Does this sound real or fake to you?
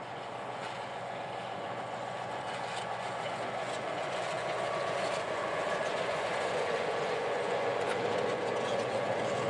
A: fake